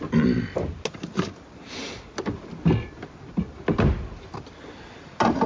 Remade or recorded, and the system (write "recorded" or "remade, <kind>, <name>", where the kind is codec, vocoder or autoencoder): recorded